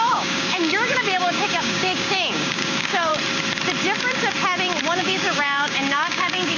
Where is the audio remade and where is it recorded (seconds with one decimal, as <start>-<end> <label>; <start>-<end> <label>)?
0.0-3.1 remade; 3.1-5.0 recorded; 5.0-6.6 remade